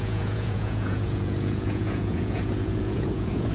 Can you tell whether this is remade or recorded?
remade